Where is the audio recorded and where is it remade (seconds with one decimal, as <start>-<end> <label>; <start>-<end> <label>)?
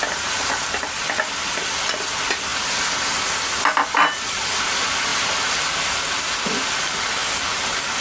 0.0-8.0 recorded